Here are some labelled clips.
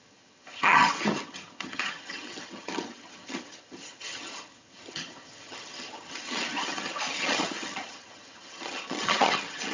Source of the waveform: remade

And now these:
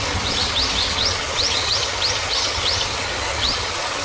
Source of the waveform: remade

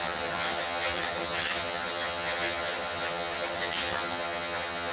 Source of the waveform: remade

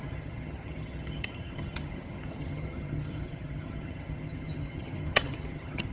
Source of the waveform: remade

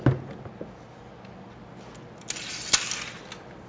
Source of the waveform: recorded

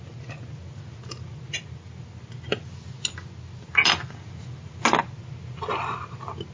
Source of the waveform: recorded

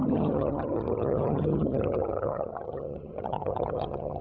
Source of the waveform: remade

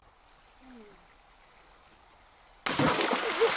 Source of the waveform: recorded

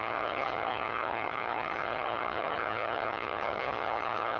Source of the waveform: remade